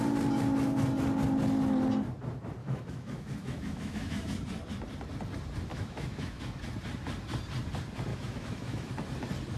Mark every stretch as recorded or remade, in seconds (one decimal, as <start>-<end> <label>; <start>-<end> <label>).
0.0-2.6 recorded; 2.6-4.3 remade; 4.3-5.7 recorded; 5.7-6.4 remade; 6.4-8.1 recorded; 8.1-8.9 remade; 8.9-9.6 recorded